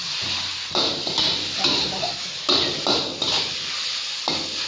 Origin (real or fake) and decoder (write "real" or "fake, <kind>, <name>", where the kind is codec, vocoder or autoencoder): real